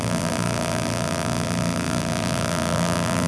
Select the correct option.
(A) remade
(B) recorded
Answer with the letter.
A